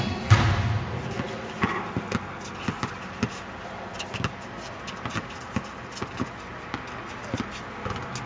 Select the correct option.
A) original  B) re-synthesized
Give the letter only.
A